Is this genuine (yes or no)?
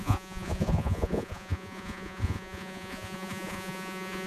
no